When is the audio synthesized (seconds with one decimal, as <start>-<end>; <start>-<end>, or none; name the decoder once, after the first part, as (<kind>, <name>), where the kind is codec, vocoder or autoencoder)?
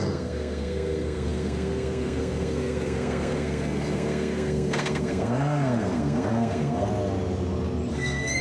0.0-6.9 (codec, SNAC); 7.9-8.4